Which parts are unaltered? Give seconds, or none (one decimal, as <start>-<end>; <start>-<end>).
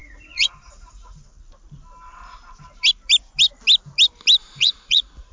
1.2-4.4